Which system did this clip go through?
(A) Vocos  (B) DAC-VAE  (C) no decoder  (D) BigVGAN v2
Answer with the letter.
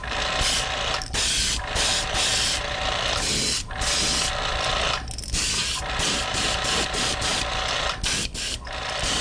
C